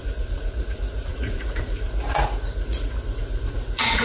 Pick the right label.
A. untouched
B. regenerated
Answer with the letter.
B